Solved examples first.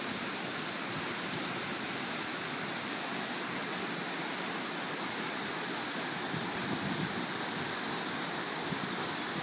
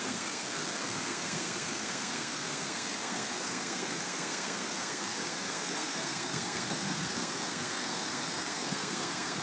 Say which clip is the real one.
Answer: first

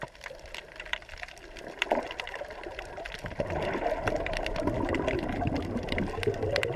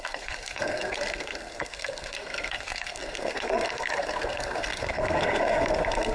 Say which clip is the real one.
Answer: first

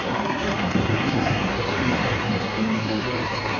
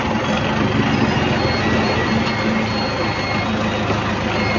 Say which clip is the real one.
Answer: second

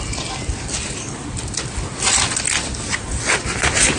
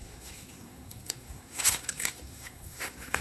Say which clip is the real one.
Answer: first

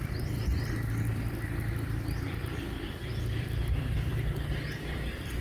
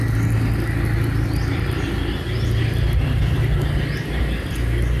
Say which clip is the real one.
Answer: second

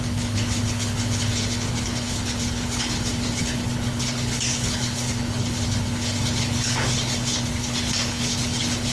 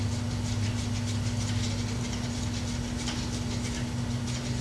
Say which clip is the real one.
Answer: second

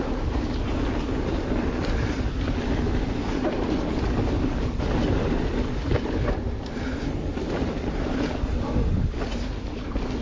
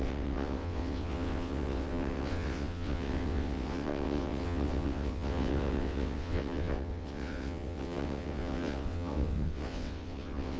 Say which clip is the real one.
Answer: first